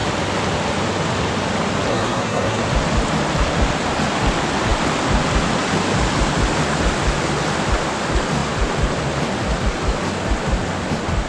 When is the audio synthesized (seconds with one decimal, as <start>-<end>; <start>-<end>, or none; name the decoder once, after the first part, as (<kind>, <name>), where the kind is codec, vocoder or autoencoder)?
1.9-2.6 (codec, SNAC)